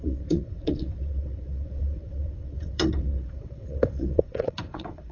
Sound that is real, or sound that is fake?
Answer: fake